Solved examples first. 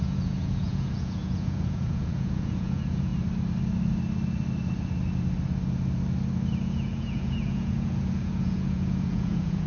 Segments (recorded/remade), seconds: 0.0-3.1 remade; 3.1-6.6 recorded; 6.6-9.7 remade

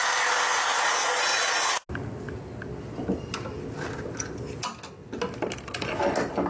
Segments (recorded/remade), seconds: 0.0-6.5 recorded

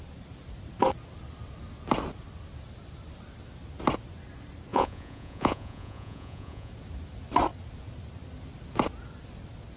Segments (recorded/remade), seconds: 0.0-4.7 recorded; 4.7-6.7 remade; 6.7-9.8 recorded

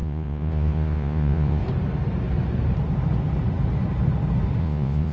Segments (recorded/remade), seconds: 0.0-1.6 remade; 1.6-4.6 recorded; 4.6-5.1 remade

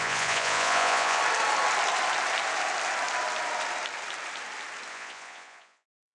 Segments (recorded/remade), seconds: 0.0-1.2 remade; 1.2-4.9 recorded; 4.9-6.1 remade